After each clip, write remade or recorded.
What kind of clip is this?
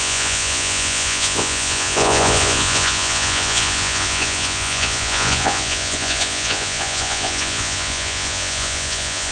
remade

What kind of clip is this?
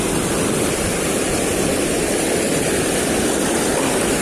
remade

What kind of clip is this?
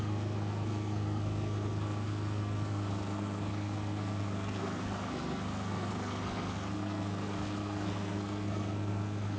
remade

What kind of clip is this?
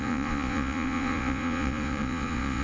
remade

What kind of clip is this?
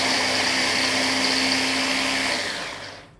recorded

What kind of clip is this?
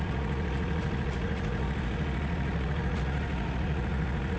remade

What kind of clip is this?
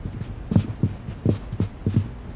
recorded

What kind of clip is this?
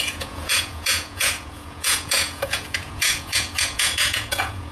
remade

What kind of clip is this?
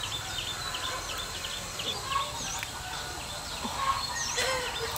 recorded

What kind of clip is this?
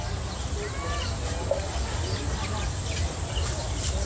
recorded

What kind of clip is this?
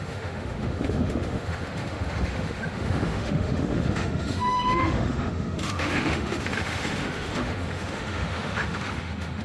remade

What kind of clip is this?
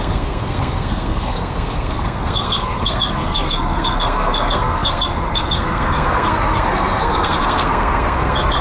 remade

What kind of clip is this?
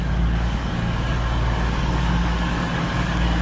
remade